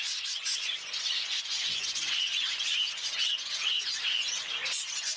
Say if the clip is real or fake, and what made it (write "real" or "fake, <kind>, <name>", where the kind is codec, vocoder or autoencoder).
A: fake, vocoder, Vocos